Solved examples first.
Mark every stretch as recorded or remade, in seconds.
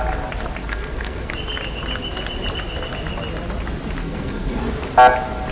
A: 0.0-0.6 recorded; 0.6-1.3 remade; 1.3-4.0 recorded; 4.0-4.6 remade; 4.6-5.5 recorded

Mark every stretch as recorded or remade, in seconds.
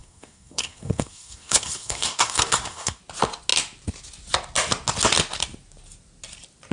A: 0.0-3.0 remade; 3.0-6.7 recorded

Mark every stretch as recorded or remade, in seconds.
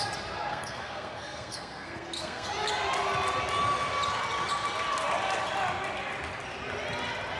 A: 0.0-0.5 recorded; 0.5-2.5 remade; 2.5-7.4 recorded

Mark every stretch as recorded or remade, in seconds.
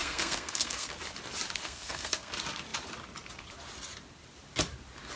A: 0.0-0.9 remade; 0.9-1.6 recorded; 1.6-2.3 remade; 2.3-5.2 recorded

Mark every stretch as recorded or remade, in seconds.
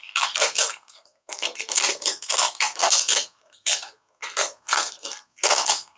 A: 0.0-6.0 remade